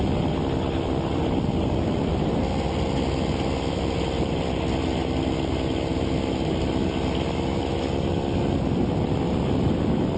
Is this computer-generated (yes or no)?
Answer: no